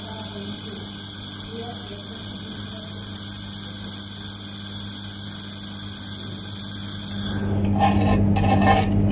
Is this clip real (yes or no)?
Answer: yes